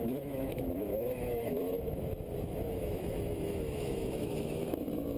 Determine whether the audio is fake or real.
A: fake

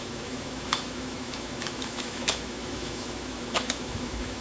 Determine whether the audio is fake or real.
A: fake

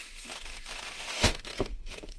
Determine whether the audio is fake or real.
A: fake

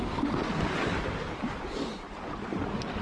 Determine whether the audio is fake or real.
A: real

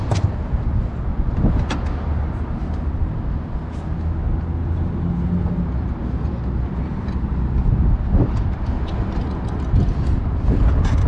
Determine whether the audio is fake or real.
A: real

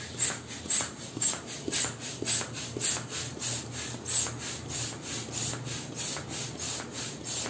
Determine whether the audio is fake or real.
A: real